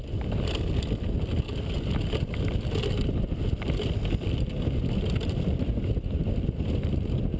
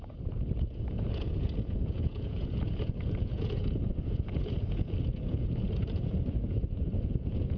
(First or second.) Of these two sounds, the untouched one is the first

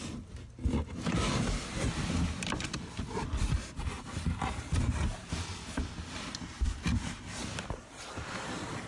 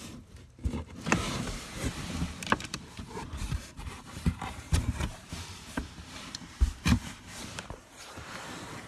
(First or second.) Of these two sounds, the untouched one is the first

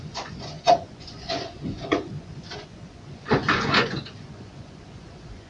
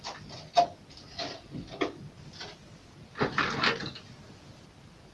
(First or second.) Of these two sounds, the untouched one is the second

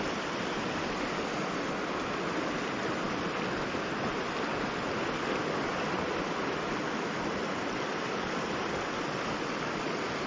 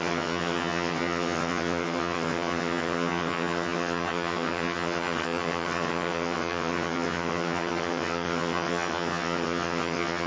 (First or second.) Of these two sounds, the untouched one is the first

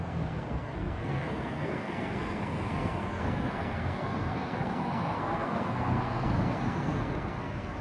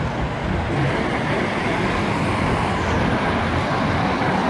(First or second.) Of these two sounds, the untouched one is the second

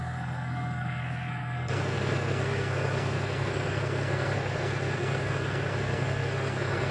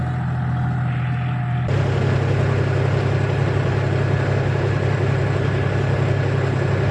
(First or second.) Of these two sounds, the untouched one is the second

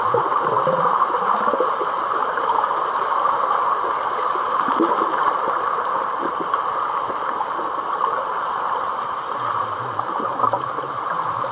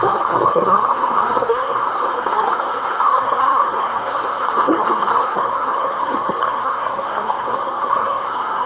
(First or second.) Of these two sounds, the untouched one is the first